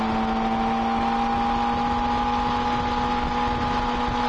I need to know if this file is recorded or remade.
recorded